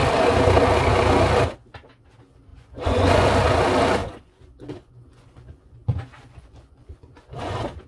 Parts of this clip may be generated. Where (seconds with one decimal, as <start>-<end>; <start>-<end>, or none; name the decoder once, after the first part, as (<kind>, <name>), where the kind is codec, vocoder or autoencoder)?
2.5-3.3 (vocoder, Vocos); 4.0-7.5